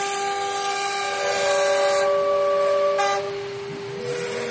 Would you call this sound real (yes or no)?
yes